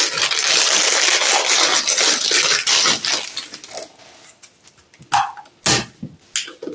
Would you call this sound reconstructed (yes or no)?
no